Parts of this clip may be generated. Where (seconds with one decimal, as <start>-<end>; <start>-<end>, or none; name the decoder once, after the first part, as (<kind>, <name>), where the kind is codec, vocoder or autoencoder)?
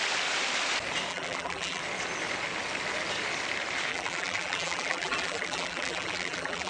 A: 1.1-1.8 (vocoder, BigVGAN v2); 3.9-6.7